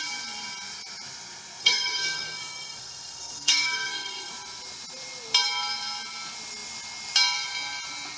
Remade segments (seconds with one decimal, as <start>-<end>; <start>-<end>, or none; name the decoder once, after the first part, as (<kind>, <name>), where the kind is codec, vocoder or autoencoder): 1.6-4.3 (codec, SNAC)